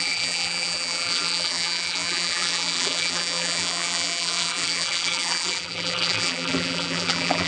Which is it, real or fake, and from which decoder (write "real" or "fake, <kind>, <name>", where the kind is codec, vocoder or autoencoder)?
fake, vocoder, BigVGAN v2